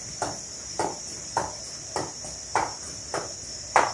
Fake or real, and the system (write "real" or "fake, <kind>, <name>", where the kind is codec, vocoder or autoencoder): real